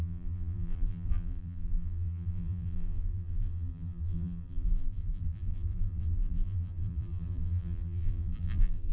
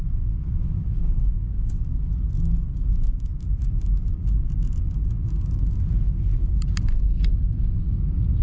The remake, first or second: first